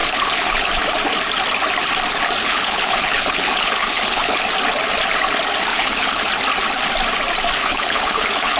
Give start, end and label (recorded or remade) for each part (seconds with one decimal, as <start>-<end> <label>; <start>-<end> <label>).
0.0-0.8 remade; 0.8-2.4 recorded; 2.4-4.4 remade; 4.4-5.7 recorded; 5.7-6.3 remade; 6.3-7.6 recorded; 7.6-8.6 remade